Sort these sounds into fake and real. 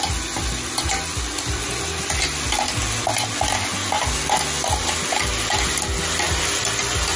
real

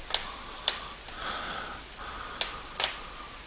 real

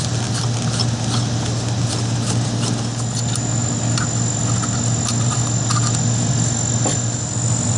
real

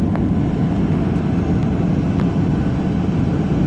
real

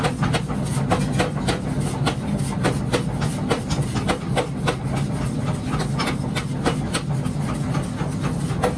real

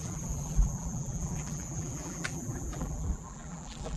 fake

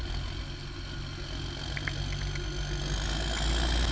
real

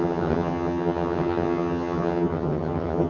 fake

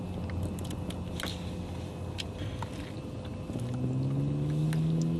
real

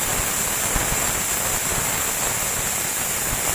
real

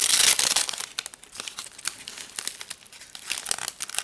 real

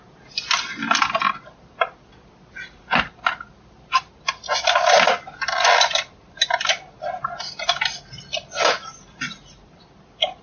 real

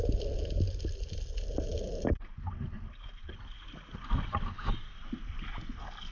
real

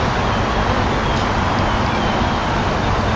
real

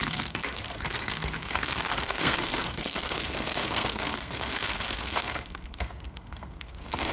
fake